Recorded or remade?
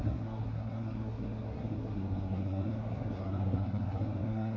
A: remade